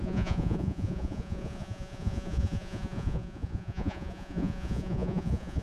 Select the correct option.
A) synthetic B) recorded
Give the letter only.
A